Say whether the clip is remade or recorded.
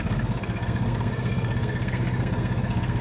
remade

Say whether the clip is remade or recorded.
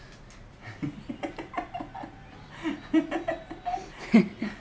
recorded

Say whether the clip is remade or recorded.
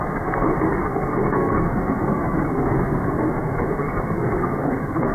remade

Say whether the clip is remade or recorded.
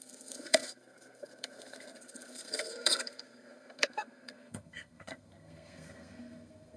remade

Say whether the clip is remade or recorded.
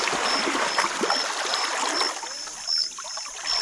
recorded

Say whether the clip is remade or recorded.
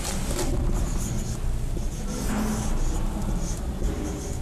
recorded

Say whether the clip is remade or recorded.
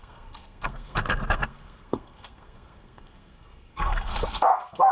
remade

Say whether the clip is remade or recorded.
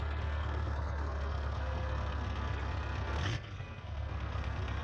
remade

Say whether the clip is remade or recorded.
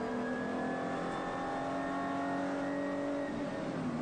recorded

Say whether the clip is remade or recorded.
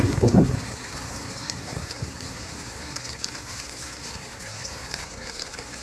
remade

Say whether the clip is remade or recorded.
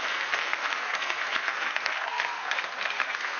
remade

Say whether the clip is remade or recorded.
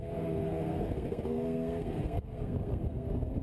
remade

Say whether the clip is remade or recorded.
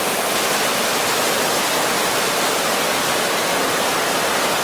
recorded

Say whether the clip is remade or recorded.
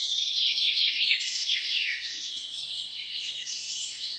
remade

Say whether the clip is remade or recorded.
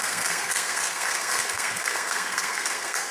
remade